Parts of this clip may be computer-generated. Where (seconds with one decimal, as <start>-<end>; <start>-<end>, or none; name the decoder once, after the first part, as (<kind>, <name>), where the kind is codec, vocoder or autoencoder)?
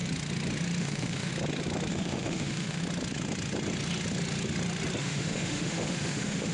0.8-1.3 (autoencoder, DAC-VAE); 1.9-2.8; 5.0-6.5